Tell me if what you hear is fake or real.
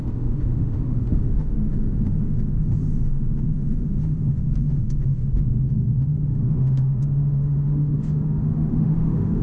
fake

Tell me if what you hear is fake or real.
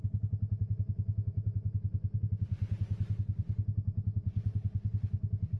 real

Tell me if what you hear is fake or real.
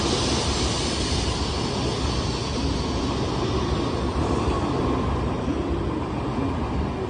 real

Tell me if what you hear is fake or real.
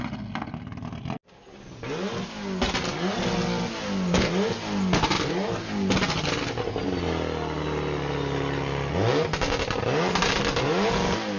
real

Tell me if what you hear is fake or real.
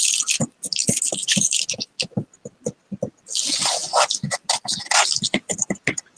real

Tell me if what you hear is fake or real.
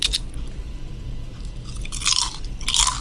real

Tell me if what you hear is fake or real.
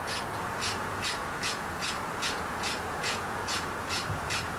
fake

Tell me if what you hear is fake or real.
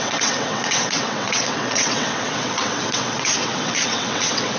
fake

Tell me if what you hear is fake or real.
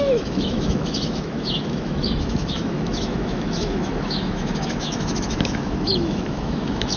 fake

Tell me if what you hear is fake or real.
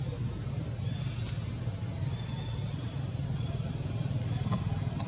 real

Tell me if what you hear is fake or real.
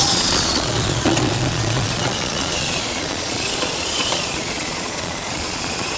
fake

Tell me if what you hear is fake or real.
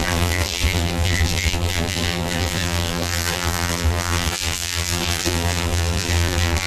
fake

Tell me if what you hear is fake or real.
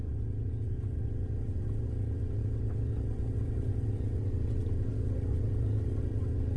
fake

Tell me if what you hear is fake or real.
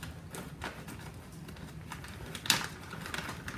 real